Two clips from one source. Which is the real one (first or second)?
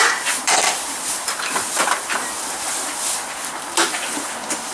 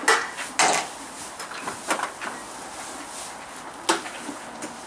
second